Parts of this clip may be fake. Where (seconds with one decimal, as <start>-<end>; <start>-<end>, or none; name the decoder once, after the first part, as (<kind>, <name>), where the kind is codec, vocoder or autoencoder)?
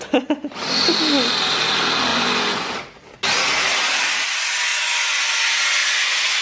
2.1-2.7 (vocoder, Vocos); 4.7-5.2; 5.8-6.4